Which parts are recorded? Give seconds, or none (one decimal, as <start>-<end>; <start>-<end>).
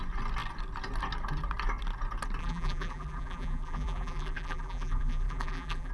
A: 0.0-2.4